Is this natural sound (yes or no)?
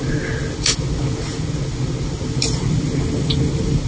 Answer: yes